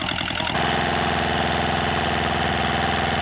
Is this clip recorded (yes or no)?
yes